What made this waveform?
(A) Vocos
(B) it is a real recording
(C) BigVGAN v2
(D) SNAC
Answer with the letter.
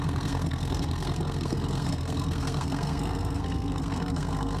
D